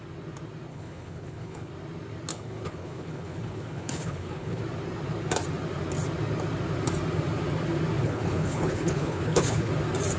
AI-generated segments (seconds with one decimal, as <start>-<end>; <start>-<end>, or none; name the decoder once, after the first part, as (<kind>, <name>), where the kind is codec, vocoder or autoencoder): 0.7-1.7 (codec, HILCodec); 2.3-4.6; 8.0-9.7